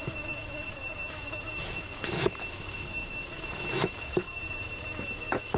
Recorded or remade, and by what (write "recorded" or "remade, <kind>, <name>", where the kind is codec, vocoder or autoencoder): remade, autoencoder, DAC-VAE